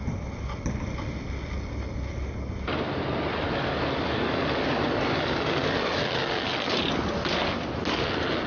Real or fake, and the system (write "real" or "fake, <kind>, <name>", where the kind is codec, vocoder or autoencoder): real